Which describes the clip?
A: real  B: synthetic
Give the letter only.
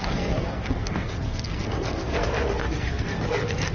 B